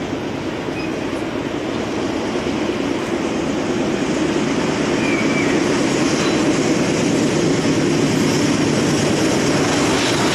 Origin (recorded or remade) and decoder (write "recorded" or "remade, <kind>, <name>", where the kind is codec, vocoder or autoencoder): recorded